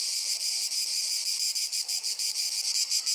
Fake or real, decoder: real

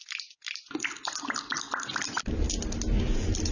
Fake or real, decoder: real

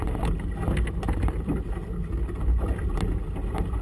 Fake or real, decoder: real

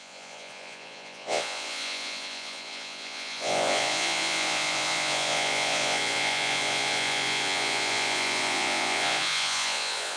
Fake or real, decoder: fake, vocoder, Vocos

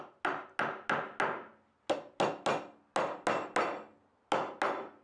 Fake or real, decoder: real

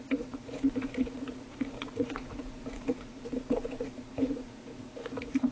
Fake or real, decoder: fake, vocoder, Vocos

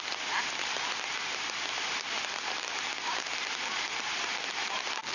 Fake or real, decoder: real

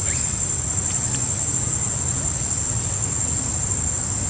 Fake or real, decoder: real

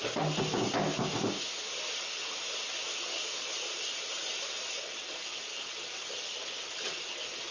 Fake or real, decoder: real